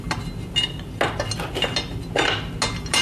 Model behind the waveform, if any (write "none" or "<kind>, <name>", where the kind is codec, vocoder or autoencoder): none